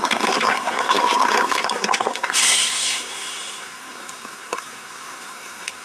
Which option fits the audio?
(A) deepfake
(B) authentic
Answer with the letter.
A